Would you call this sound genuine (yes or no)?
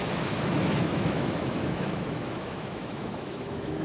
no